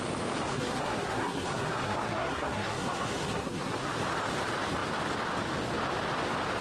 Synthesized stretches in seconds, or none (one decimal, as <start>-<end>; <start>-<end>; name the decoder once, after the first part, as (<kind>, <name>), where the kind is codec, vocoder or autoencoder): 0.5-3.9 (codec, SNAC)